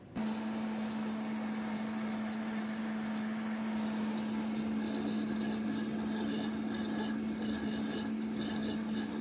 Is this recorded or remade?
recorded